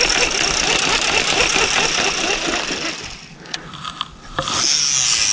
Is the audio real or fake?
real